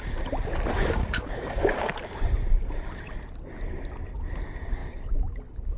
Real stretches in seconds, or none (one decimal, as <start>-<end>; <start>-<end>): 0.0-1.0; 1.9-5.8